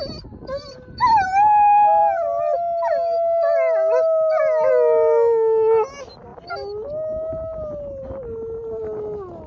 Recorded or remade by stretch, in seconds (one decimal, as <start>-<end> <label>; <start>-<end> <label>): 0.0-9.5 recorded